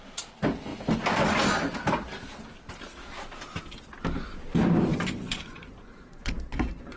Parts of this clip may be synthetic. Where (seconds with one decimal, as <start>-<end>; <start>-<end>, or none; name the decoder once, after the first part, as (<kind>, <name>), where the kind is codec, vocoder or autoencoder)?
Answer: 4.9-6.3 (vocoder, Vocos)